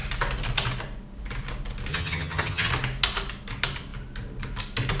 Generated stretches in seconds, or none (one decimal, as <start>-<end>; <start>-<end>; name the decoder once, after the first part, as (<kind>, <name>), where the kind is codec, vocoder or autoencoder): 1.9-2.7 (vocoder, HiFi-GAN)